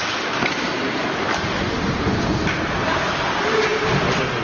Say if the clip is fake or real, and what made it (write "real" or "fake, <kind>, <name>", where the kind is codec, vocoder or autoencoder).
real